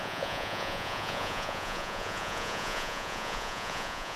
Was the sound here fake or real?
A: fake